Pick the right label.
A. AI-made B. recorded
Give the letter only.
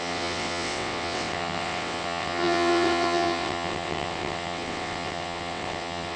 A